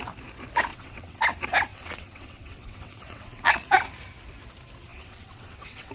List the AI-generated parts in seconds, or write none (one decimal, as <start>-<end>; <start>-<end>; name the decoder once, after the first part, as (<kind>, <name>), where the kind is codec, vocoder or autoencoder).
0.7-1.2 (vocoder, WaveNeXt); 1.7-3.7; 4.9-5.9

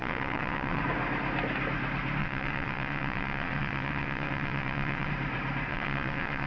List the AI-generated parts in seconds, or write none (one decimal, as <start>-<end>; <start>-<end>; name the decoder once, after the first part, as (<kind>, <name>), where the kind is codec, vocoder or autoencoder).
0.0-0.8 (vocoder, WaveNeXt); 2.2-5.1; 5.7-6.5

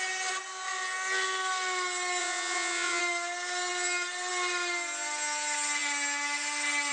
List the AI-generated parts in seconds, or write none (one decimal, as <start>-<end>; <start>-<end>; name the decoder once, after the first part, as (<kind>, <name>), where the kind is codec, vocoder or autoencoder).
2.2-3.0 (vocoder, WaveNeXt)